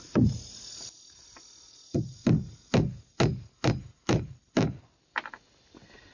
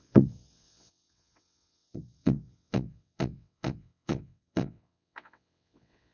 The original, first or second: first